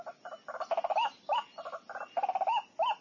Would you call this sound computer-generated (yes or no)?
no